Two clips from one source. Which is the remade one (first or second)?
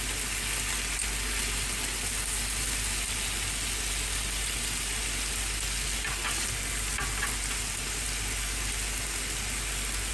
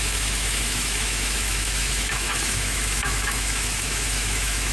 second